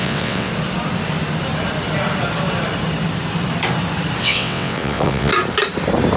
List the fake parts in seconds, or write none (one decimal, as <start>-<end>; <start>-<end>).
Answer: 0.0-0.5; 4.2-5.3